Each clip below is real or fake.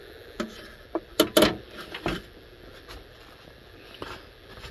real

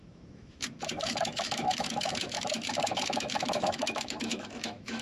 fake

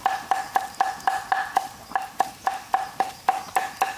real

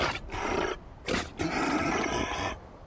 real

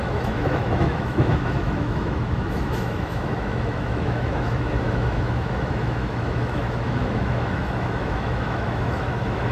fake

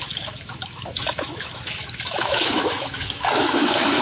fake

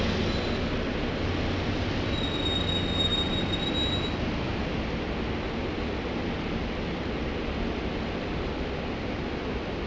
real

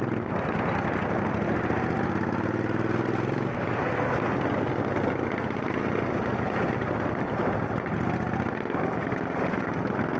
real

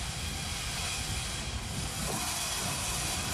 real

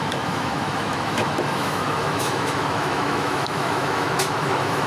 fake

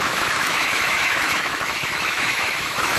fake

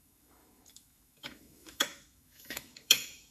fake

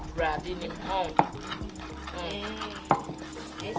real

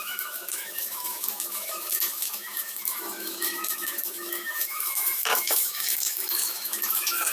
fake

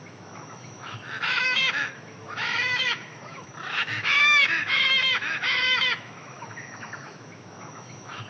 fake